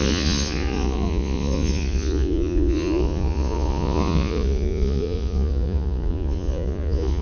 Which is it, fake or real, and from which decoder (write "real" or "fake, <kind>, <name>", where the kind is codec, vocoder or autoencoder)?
fake, vocoder, Vocos